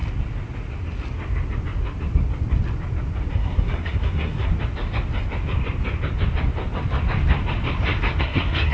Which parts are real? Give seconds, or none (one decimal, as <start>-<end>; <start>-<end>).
0.0-3.3; 4.5-8.2